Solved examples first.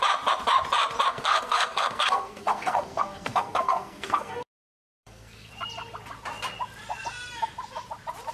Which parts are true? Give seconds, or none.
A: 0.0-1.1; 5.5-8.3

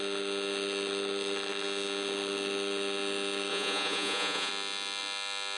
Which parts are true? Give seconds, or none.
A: 0.0-3.5; 4.5-5.6